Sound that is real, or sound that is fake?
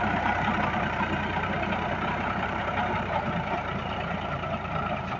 fake